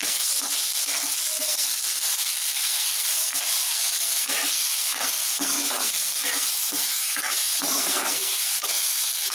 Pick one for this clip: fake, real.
fake